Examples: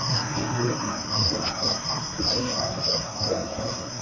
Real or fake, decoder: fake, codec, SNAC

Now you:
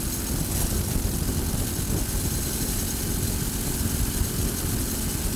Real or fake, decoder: real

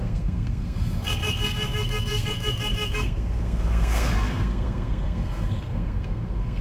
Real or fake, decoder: fake, codec, SNAC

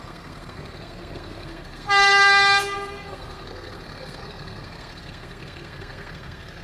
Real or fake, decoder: fake, codec, SNAC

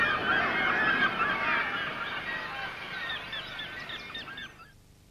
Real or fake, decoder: real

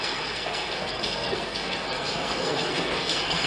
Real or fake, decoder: fake, codec, SNAC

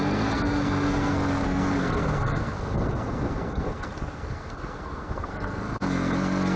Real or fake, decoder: fake, codec, SNAC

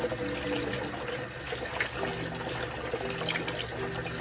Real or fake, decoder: real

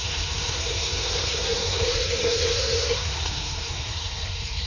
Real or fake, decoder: fake, codec, SNAC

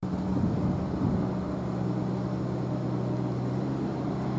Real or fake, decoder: real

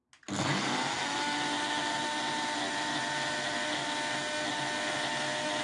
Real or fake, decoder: real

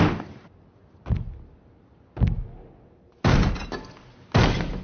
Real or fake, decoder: real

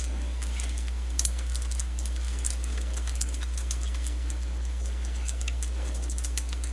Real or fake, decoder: fake, codec, SNAC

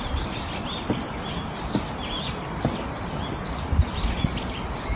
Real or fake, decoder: real